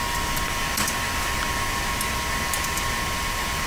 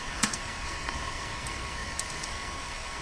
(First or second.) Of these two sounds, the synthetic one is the second